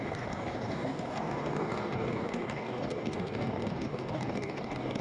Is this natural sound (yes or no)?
no